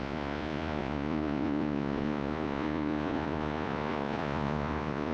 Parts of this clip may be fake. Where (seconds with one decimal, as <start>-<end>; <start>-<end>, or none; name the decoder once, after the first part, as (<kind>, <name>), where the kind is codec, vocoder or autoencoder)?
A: 0.0-5.1 (vocoder, Vocos)